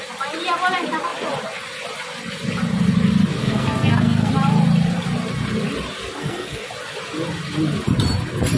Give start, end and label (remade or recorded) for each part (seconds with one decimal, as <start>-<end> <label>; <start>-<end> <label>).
0.0-3.4 recorded; 3.4-4.3 remade; 4.3-6.2 recorded; 6.2-6.7 remade; 6.7-8.6 recorded